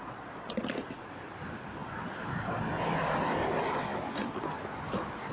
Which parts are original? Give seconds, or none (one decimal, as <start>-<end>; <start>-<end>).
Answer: 0.0-5.3